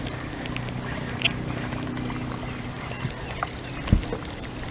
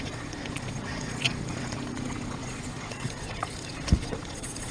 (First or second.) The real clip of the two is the first